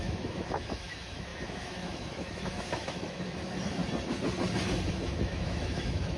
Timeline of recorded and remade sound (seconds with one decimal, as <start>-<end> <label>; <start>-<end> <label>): 0.0-3.8 remade; 3.8-4.9 recorded; 4.9-6.2 remade